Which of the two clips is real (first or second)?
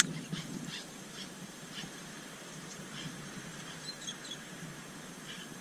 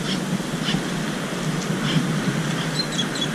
second